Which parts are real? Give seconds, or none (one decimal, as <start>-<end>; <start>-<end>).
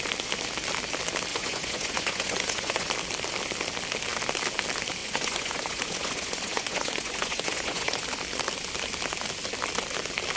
0.0-1.3; 2.9-5.0; 8.0-10.4